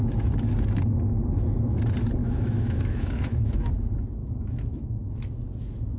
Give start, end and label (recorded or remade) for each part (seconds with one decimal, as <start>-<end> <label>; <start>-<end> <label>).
0.0-2.2 recorded; 2.2-3.7 remade; 3.7-4.2 recorded; 4.2-5.1 remade; 5.1-6.0 recorded